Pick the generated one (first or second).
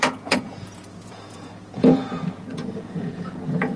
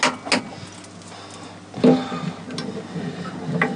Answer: first